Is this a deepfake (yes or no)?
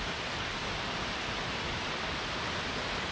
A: no